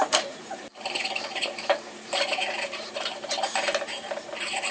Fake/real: fake